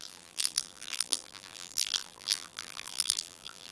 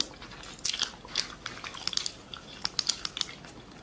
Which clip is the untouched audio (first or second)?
second